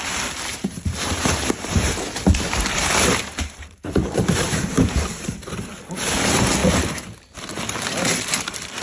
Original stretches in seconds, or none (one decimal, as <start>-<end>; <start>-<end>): 0.0-0.5; 5.5-8.8